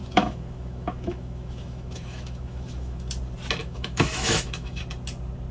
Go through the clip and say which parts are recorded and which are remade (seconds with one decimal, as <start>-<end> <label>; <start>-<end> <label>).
0.0-3.1 remade; 3.1-3.6 recorded; 3.6-4.8 remade; 4.8-5.5 recorded